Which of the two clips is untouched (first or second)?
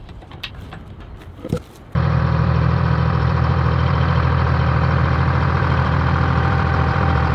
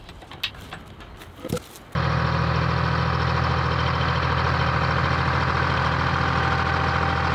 second